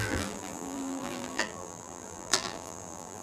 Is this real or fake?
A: fake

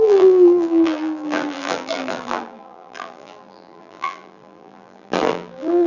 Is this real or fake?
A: fake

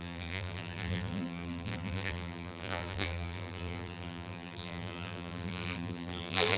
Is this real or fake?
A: fake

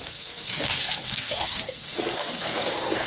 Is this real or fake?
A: fake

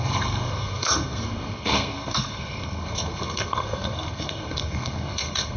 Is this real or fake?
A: fake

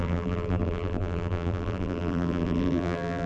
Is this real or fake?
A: fake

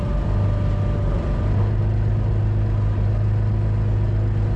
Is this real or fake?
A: real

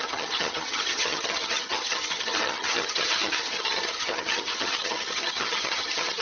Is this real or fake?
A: fake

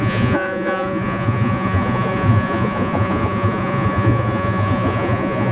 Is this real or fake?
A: fake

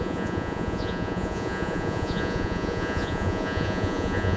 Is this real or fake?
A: fake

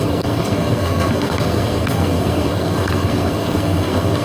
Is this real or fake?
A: fake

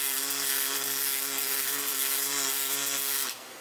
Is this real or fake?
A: fake